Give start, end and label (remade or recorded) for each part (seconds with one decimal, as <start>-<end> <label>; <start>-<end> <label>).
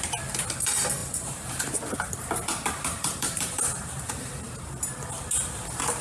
0.0-1.0 recorded; 1.0-2.1 remade; 2.1-2.9 recorded; 2.9-4.7 remade; 4.7-6.0 recorded